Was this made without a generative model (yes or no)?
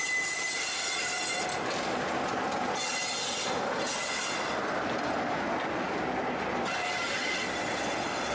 yes